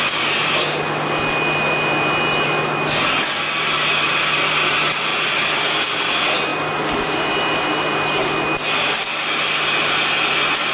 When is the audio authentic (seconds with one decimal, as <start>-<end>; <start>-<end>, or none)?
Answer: 0.0-10.7